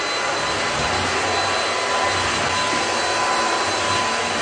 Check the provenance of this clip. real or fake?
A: real